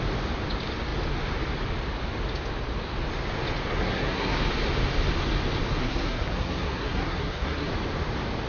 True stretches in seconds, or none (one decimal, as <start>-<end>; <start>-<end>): 0.0-3.7; 4.4-5.8; 7.7-8.5